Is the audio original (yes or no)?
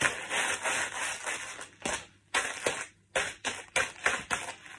yes